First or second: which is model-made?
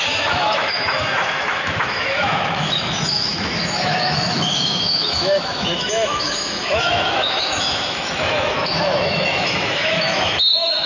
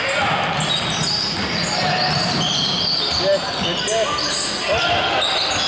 first